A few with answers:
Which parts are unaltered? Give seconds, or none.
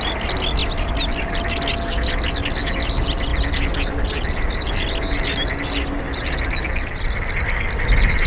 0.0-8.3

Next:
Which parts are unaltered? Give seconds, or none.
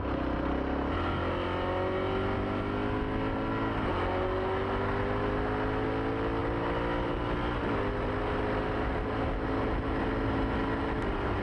0.0-11.4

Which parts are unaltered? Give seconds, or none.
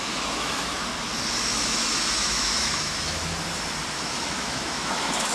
0.9-1.4; 3.3-3.9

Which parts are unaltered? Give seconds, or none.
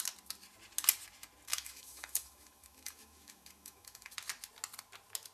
0.0-1.5; 4.1-5.3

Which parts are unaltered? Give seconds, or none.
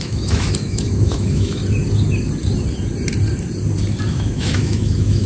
1.6-4.1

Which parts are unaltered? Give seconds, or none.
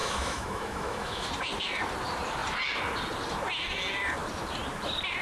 1.3-5.2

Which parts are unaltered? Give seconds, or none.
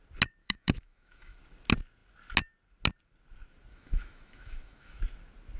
0.0-0.4; 1.4-3.7; 5.0-5.6